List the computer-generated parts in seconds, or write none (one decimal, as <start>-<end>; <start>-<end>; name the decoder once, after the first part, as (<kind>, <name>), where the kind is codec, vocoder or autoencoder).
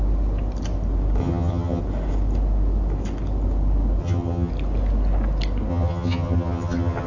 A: 1.2-1.8 (vocoder, HiFi-GAN); 4.0-4.5; 5.7-7.1